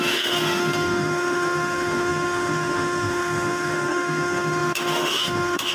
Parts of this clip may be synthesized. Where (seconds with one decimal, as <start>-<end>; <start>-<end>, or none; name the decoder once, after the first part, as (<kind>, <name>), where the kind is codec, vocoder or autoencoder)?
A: 0.0-5.7 (autoencoder, DAC-VAE)